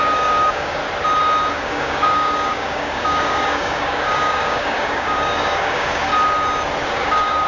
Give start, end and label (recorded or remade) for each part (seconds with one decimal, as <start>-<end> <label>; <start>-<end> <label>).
0.0-0.8 remade; 0.8-1.5 recorded; 1.5-6.1 remade; 6.1-6.9 recorded; 6.9-7.5 remade

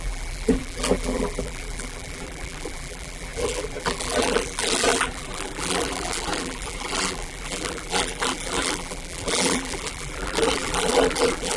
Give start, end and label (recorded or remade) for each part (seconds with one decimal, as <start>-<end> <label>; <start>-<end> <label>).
0.0-11.6 remade

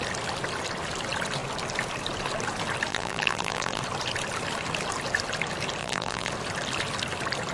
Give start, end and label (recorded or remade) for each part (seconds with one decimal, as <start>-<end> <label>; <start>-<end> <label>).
0.0-2.9 recorded; 2.9-3.8 remade; 3.8-5.8 recorded; 5.8-6.3 remade; 6.3-7.5 recorded